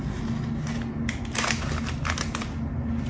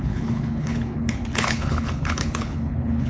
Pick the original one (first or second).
first